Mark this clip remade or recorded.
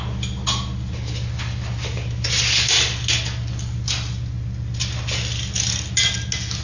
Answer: recorded